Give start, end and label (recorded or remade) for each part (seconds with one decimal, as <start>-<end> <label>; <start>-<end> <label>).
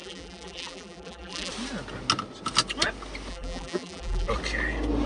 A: 0.0-1.5 remade; 1.5-3.3 recorded; 3.3-4.3 remade; 4.3-5.1 recorded